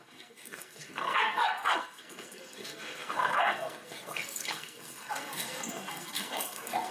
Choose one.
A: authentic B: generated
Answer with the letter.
B